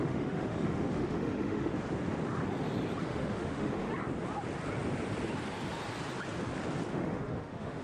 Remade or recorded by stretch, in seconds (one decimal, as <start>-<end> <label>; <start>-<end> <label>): 0.0-1.7 remade; 1.7-3.0 recorded; 3.0-3.9 remade; 3.9-6.9 recorded; 6.9-7.8 remade